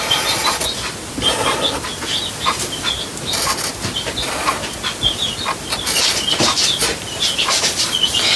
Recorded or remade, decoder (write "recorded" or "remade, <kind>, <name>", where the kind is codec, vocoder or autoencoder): recorded